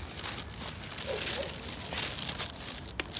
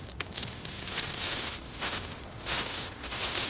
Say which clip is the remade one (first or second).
second